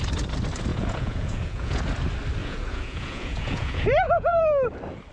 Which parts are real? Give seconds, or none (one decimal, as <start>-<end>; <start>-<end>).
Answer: 0.0-0.7; 1.8-2.4; 4.4-5.1